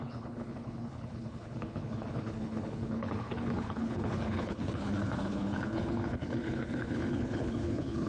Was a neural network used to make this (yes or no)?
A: yes